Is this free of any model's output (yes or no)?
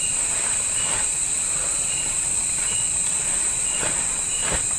yes